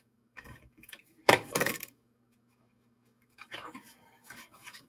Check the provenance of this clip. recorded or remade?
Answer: remade